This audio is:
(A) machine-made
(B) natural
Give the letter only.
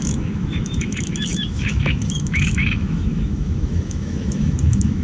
A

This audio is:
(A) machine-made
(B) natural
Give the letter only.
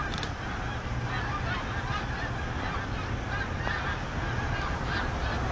B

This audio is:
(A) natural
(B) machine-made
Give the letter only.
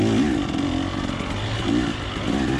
A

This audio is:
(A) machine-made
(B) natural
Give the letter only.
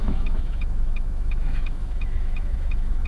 A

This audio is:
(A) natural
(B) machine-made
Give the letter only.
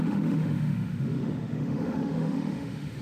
B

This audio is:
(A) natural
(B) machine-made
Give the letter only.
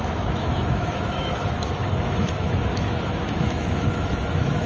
B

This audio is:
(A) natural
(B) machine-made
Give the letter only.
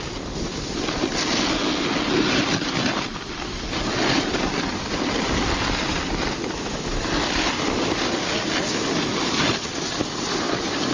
A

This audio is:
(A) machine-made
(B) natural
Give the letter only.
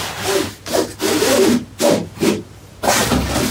B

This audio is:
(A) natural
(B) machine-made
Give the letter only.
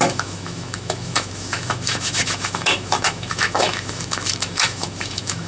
B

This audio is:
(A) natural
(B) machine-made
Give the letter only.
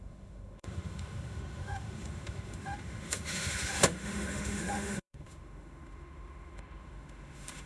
B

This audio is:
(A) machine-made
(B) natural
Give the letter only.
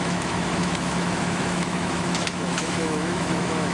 A